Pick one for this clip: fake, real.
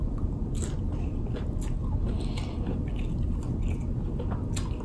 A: real